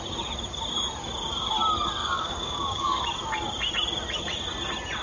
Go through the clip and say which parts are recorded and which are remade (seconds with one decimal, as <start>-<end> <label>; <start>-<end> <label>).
0.0-2.0 recorded; 2.0-3.0 remade; 3.0-5.0 recorded